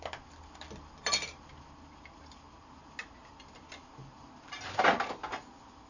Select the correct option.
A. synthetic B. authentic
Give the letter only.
B